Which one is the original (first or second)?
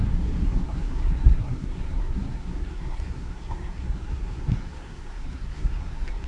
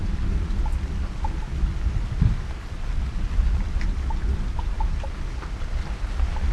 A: second